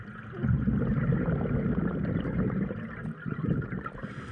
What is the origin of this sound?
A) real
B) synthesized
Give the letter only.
A